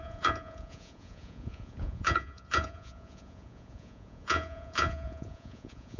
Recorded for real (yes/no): no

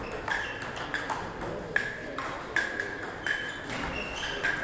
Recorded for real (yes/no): yes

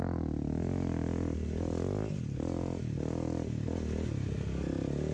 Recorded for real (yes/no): yes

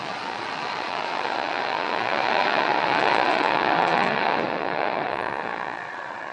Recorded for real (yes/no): no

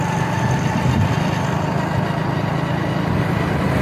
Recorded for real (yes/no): yes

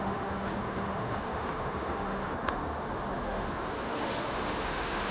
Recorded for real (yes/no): no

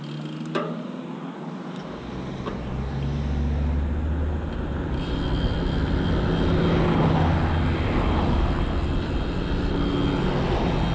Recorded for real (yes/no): yes